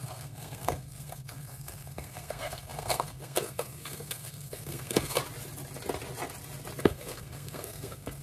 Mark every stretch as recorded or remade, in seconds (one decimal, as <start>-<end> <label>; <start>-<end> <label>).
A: 0.0-5.2 remade; 5.2-6.8 recorded; 6.8-8.2 remade